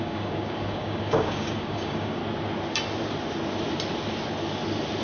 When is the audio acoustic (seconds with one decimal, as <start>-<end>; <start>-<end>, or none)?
2.2-5.0